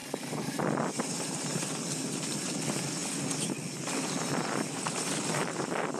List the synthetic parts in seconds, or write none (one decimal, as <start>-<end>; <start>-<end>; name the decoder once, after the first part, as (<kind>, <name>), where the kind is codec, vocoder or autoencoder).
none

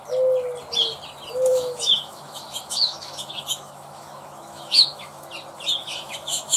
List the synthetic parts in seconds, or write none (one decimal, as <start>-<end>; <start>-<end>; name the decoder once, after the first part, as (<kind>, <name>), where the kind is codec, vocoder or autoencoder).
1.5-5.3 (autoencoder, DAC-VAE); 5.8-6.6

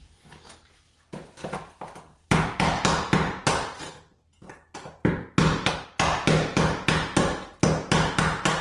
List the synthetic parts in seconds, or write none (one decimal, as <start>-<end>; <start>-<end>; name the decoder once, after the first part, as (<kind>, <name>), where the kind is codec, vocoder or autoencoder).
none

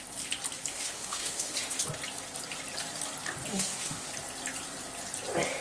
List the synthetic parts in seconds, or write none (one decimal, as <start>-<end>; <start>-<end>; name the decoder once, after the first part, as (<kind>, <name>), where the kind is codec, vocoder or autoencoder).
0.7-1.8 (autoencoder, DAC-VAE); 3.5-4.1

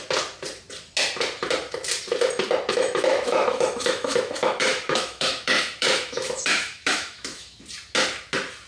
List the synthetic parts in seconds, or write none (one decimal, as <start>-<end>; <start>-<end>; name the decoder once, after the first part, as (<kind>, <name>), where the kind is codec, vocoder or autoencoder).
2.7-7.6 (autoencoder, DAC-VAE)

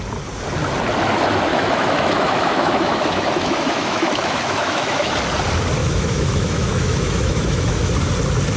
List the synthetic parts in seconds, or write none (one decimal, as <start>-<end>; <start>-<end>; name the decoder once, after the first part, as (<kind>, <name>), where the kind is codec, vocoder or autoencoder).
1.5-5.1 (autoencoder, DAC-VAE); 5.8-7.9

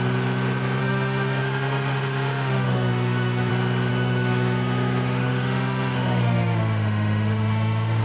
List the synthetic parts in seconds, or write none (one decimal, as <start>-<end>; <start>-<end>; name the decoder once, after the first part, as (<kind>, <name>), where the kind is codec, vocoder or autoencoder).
0.8-3.5 (autoencoder, DAC-VAE); 3.9-8.0